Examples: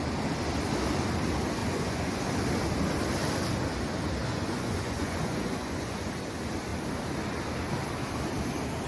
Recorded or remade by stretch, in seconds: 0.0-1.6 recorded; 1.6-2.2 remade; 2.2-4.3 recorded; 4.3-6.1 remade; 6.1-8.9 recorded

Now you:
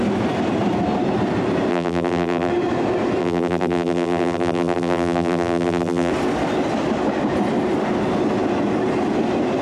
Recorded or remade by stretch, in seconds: 0.0-1.7 recorded; 1.7-2.5 remade; 2.5-3.2 recorded; 3.2-6.1 remade; 6.1-9.6 recorded

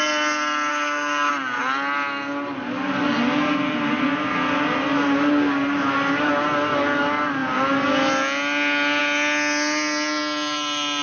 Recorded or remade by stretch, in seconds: 0.0-0.7 recorded; 0.7-1.3 remade; 1.3-11.0 recorded

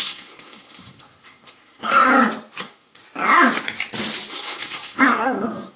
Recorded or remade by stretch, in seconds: 0.0-2.1 remade; 2.1-2.6 recorded; 2.6-3.0 remade; 3.0-4.3 recorded; 4.3-5.8 remade

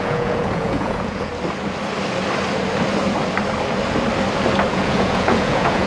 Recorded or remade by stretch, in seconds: 0.0-1.3 remade; 1.3-4.7 recorded; 4.7-5.9 remade

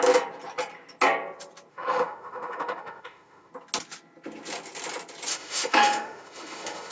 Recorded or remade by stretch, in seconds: 0.0-1.7 recorded; 1.7-3.5 remade; 3.5-5.3 recorded; 5.3-6.9 remade

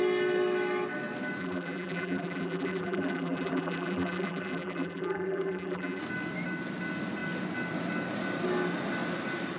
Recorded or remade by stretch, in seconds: 0.0-1.4 recorded; 1.4-6.0 remade; 6.0-9.6 recorded